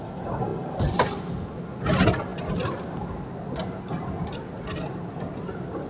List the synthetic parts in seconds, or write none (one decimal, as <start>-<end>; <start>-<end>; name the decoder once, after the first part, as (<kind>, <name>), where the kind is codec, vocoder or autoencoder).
none